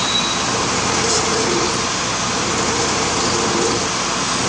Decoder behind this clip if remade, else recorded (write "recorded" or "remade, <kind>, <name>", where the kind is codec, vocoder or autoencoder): recorded